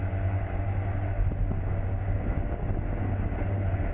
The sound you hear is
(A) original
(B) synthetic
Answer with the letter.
A